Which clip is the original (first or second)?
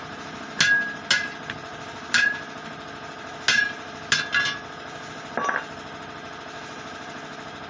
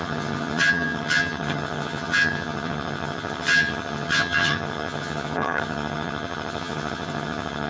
first